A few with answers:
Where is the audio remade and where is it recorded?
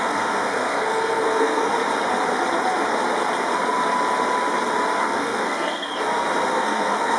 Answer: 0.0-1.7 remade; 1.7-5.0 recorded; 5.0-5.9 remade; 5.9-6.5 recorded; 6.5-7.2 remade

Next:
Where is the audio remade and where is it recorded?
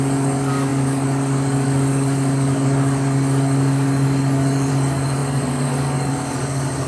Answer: 0.0-6.9 remade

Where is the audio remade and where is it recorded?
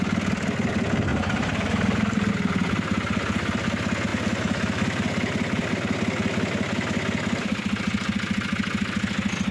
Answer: 0.0-1.1 recorded; 1.1-2.3 remade; 2.3-4.1 recorded; 4.1-5.7 remade; 5.7-9.5 recorded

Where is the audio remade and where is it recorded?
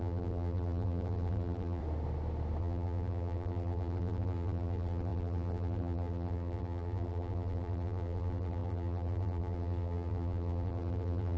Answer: 0.0-1.8 remade; 1.8-2.6 recorded; 2.6-11.4 remade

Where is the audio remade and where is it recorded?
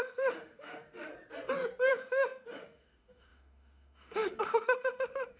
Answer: 0.0-1.1 remade; 1.1-1.9 recorded; 1.9-5.4 remade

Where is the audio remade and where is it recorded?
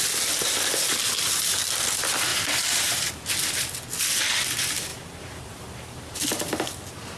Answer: 0.0-2.3 recorded; 2.3-3.1 remade; 3.1-4.9 recorded; 4.9-6.2 remade; 6.2-7.2 recorded